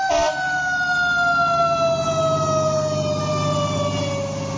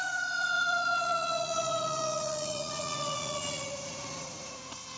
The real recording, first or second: first